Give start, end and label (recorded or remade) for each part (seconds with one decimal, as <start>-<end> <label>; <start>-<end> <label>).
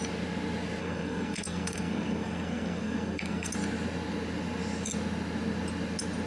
0.0-0.8 recorded; 0.8-3.5 remade; 3.5-6.3 recorded